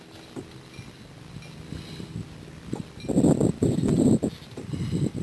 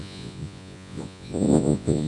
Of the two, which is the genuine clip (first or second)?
first